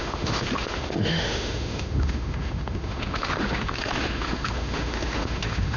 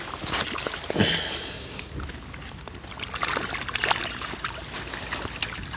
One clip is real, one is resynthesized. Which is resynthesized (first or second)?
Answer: first